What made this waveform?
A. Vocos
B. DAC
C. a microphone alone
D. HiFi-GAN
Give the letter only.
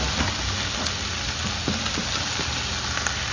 C